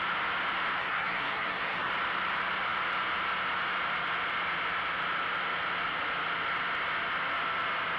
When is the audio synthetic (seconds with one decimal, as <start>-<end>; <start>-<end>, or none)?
0.8-1.9